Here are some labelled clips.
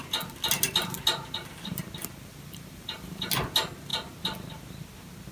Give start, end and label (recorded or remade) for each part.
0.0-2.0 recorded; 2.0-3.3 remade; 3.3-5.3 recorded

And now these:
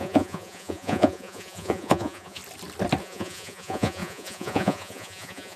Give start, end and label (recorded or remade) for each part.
0.0-2.4 remade; 2.4-3.0 recorded; 3.0-5.6 remade

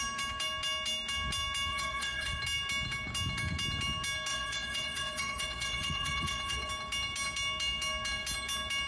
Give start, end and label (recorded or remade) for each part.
0.0-1.7 recorded; 1.7-2.4 remade; 2.4-4.3 recorded; 4.3-6.7 remade; 6.7-8.9 recorded

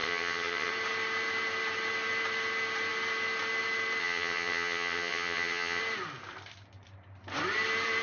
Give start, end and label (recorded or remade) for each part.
0.0-0.7 remade; 0.7-4.0 recorded; 4.0-5.8 remade; 5.8-8.0 recorded

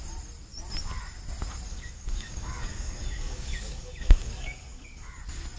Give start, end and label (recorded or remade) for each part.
0.0-1.7 recorded; 1.7-5.1 remade; 5.1-5.6 recorded

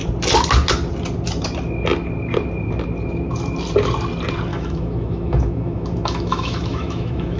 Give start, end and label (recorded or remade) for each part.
0.0-4.5 recorded; 4.5-7.4 remade

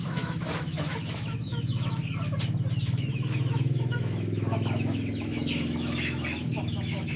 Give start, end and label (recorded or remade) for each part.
0.0-2.0 remade; 2.0-2.9 recorded; 2.9-7.2 remade